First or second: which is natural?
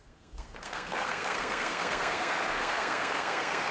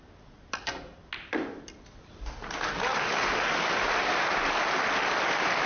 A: second